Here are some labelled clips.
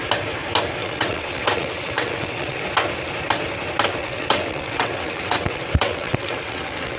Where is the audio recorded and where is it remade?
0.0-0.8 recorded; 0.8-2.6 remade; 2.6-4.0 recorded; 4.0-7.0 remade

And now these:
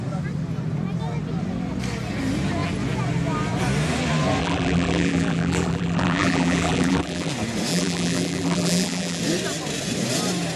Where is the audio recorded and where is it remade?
0.0-4.4 recorded; 4.4-7.3 remade; 7.3-7.7 recorded; 7.7-9.2 remade; 9.2-10.6 recorded

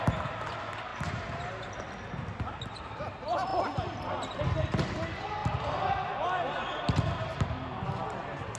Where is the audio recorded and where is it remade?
0.0-8.6 recorded

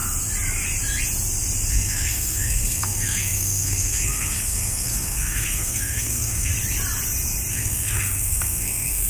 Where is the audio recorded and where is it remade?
0.0-1.7 recorded; 1.7-6.5 remade; 6.5-7.5 recorded; 7.5-9.1 remade

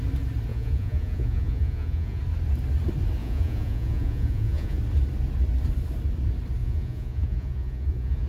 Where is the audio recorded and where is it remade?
0.0-0.5 recorded; 0.5-2.2 remade; 2.2-3.2 recorded; 3.2-4.8 remade; 4.8-6.6 recorded; 6.6-8.3 remade

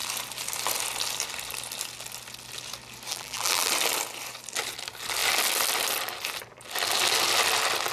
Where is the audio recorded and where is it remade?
0.0-3.1 recorded; 3.1-3.7 remade; 3.7-7.9 recorded

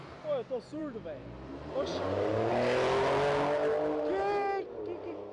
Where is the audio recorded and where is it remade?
0.0-5.3 recorded